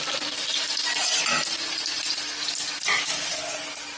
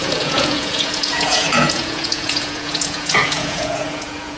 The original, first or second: first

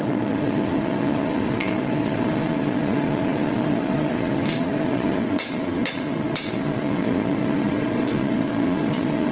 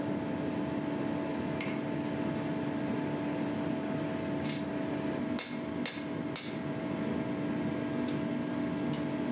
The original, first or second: second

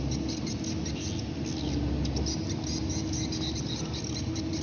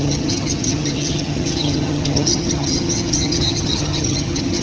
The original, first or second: first